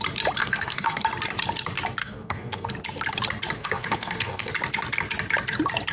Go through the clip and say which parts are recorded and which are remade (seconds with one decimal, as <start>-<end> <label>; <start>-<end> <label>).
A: 0.0-0.4 recorded; 0.4-1.0 remade; 1.0-2.0 recorded; 2.0-2.7 remade; 2.7-3.6 recorded; 3.6-4.5 remade; 4.5-5.9 recorded